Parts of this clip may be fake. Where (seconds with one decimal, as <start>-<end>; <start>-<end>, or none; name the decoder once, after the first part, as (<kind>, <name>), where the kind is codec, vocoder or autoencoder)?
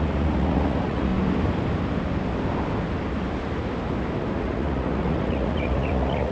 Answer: 0.0-1.1 (vocoder, Vocos); 4.4-6.3